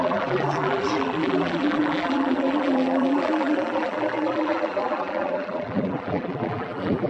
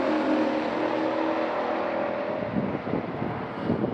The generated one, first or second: first